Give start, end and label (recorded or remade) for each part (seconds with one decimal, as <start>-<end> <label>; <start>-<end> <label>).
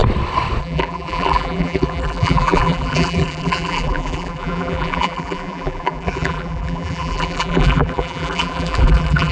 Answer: 0.0-0.6 recorded; 0.6-9.3 remade